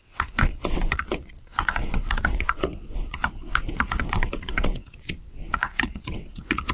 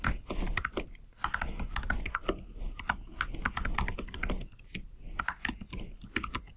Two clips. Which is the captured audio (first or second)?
second